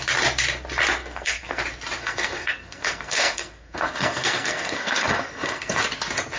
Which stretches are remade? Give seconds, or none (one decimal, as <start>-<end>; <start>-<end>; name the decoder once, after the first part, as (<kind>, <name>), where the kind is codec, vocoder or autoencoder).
1.0-1.6 (codec, SNAC); 2.0-5.8